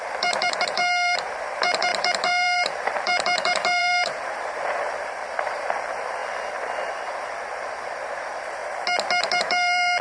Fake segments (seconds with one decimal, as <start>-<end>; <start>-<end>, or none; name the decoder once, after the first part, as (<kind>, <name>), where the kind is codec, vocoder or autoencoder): 0.0-6.2 (vocoder, BigVGAN v2); 6.9-8.6; 9.4-10.0